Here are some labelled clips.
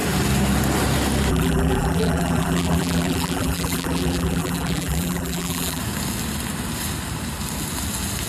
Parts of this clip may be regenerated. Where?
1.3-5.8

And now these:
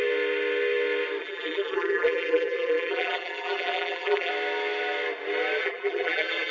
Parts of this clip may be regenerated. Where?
1.2-4.3; 5.6-6.5

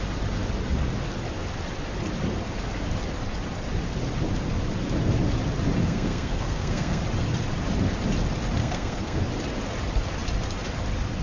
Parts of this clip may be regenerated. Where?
5.8-7.0; 8.6-9.2

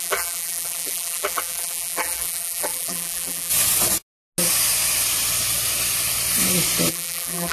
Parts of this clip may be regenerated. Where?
0.0-3.5; 6.9-7.5

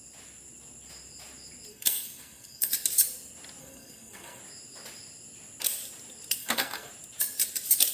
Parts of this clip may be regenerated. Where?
1.7-2.7; 3.6-4.4; 6.4-6.9

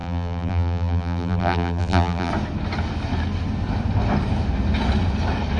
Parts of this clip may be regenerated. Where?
0.0-2.3

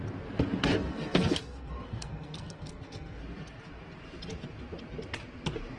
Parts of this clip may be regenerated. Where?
0.6-3.2

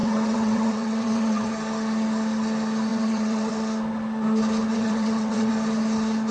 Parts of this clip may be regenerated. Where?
0.0-1.5; 2.9-3.5; 4.7-5.5